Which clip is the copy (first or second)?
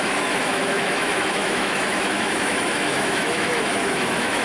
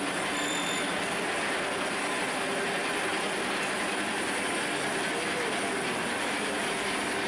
first